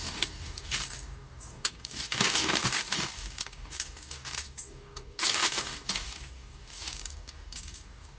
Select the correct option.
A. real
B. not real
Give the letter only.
B